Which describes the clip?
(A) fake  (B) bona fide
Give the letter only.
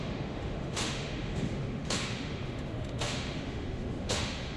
A